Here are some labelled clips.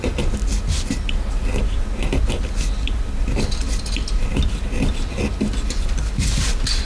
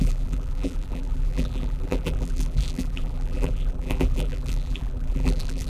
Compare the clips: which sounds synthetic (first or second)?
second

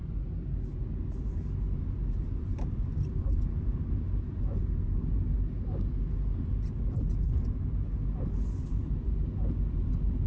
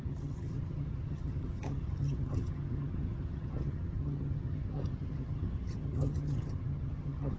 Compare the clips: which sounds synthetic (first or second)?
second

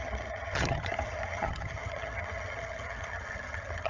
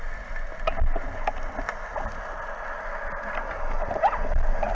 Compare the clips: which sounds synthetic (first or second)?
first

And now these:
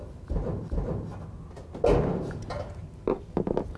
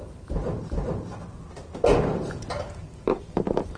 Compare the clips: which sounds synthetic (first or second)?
second